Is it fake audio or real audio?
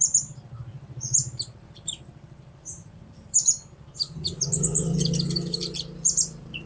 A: fake